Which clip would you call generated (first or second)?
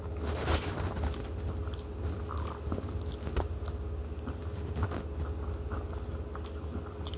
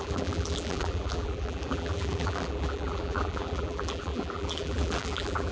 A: second